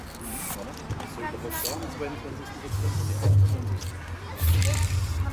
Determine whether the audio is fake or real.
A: real